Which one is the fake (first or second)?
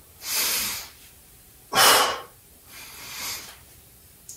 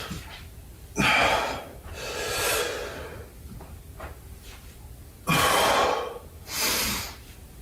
first